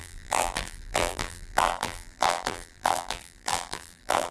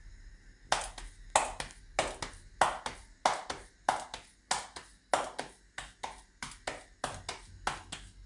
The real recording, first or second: second